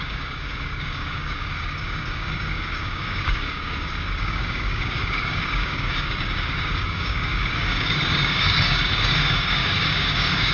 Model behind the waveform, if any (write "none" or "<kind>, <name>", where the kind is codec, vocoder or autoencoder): codec, DAC